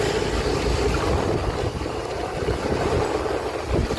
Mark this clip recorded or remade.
recorded